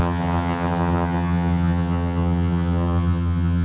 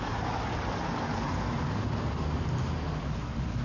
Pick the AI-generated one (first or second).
first